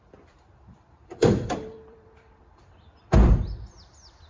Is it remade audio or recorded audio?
remade